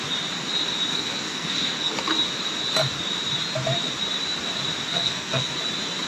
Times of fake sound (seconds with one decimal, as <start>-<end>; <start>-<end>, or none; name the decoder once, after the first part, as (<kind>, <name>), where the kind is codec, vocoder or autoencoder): 0.9-1.9 (codec, SNAC); 4.9-5.5